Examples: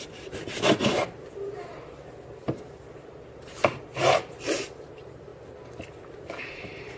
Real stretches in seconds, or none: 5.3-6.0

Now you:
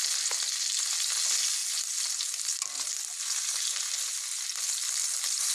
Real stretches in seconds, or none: 0.0-5.5

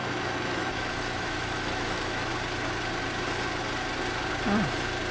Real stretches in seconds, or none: 2.3-5.1